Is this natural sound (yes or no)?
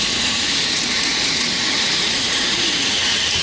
no